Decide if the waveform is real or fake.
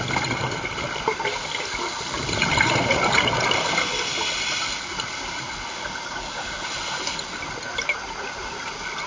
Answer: real